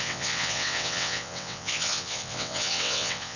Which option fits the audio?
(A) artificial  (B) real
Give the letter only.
A